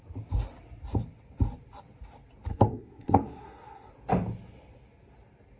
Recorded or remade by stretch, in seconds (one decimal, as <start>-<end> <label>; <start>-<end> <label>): 0.0-2.5 recorded; 2.5-3.9 remade; 3.9-5.6 recorded